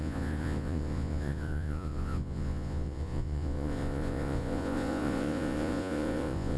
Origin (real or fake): fake